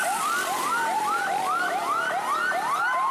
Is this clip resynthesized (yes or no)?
no